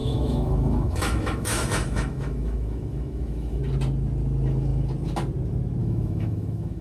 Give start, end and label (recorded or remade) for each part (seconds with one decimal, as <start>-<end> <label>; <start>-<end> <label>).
0.0-3.6 remade; 3.6-5.8 recorded; 5.8-6.8 remade